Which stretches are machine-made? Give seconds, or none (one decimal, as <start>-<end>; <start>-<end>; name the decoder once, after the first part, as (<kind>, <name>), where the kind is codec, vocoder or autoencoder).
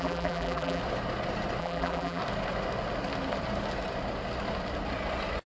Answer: 0.0-0.8 (vocoder, BigVGAN v2); 1.6-2.2